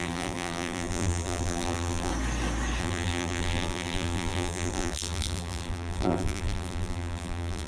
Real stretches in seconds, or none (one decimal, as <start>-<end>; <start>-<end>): 2.1-2.8